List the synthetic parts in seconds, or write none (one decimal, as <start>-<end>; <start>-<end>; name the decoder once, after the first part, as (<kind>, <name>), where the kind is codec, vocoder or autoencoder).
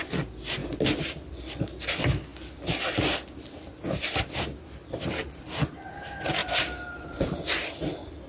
none